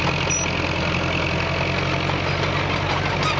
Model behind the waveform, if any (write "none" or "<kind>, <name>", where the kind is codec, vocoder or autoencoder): none